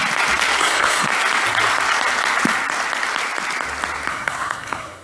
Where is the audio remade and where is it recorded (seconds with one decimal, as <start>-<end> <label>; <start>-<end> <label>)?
0.0-0.6 recorded; 0.6-1.1 remade; 1.1-4.1 recorded; 4.1-5.0 remade